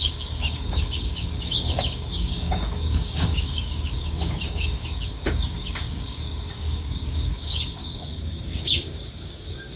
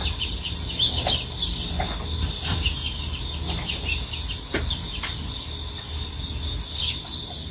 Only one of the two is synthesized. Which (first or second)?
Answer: first